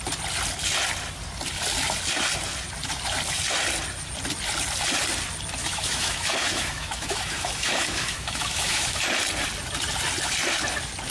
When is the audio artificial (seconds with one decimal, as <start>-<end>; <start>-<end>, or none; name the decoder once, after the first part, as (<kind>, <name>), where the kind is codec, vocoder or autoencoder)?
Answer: 5.6-9.0 (autoencoder, DAC-VAE)